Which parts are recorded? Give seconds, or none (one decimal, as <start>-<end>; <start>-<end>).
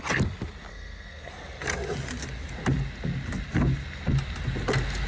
0.0-0.7; 1.3-5.1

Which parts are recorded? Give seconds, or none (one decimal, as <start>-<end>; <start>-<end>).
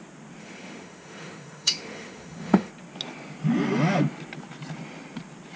0.0-0.4; 2.7-5.6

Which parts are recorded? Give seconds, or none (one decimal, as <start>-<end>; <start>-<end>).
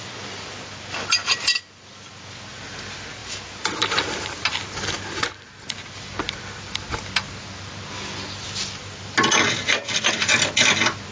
0.0-11.1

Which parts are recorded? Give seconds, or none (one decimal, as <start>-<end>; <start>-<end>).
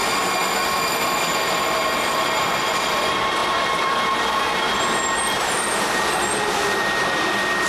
0.0-3.4; 7.2-7.7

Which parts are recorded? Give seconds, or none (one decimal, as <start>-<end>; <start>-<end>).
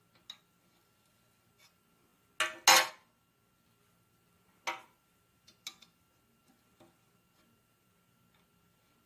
0.0-9.1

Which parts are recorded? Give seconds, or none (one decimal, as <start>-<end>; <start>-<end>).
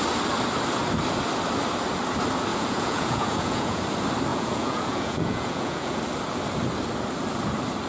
0.0-2.5; 3.8-4.3; 6.0-7.9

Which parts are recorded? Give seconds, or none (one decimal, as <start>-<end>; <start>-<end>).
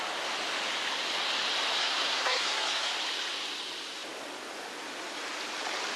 0.0-1.8; 2.9-6.0